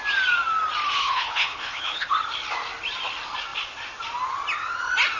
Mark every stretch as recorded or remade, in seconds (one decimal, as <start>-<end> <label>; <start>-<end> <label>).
0.0-1.0 recorded; 1.0-2.1 remade; 2.1-5.2 recorded

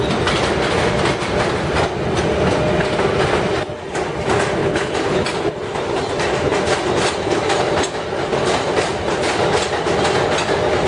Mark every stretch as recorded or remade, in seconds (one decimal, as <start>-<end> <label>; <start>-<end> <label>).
0.0-4.6 recorded; 4.6-5.2 remade; 5.2-10.9 recorded

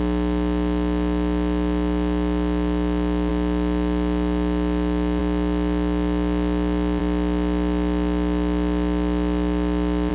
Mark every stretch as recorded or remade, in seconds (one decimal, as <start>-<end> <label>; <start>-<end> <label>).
0.0-10.1 recorded

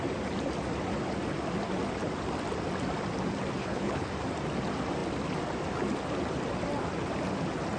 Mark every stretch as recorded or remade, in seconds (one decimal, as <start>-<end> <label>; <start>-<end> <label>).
0.0-3.6 recorded; 3.6-4.1 remade; 4.1-7.8 recorded